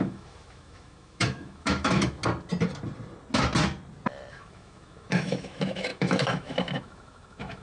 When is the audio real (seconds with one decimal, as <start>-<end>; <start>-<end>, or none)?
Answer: 2.2-4.3